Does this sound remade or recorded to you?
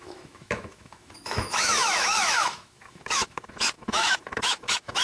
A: remade